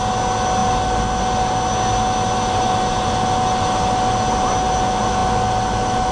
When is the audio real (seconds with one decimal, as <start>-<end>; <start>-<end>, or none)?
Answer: 0.0-6.1